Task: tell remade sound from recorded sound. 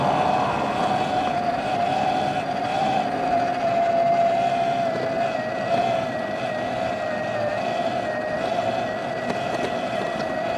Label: recorded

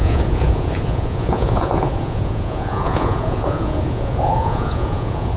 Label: remade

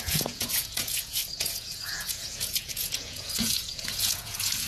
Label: remade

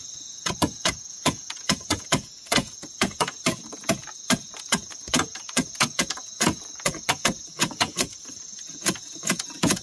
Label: remade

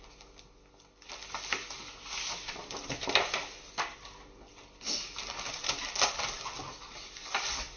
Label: recorded